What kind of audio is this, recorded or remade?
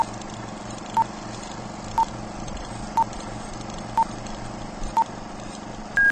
recorded